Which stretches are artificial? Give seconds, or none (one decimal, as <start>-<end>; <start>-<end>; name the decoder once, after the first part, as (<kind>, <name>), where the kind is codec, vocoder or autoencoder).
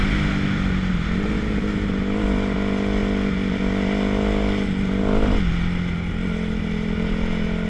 none